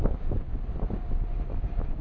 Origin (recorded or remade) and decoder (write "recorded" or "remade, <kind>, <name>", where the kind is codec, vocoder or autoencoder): recorded